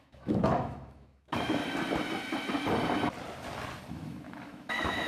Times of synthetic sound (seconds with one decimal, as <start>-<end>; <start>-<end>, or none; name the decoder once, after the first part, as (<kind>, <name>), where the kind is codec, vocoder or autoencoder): 0.0-1.6 (autoencoder, DAC-VAE); 3.9-5.1